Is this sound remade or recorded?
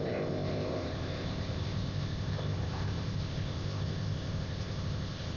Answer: remade